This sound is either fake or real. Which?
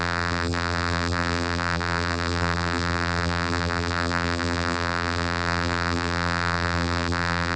fake